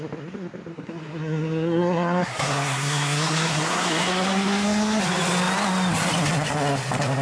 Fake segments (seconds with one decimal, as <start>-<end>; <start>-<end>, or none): 0.7-5.0